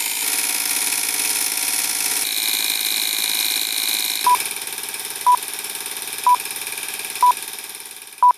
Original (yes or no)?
yes